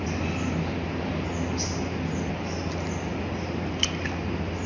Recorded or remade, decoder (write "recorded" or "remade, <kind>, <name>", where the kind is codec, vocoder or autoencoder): recorded